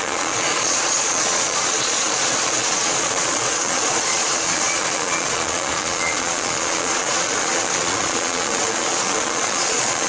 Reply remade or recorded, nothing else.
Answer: remade